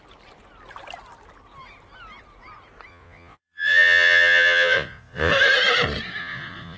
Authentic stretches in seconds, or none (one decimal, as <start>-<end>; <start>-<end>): 0.0-2.9; 5.3-6.2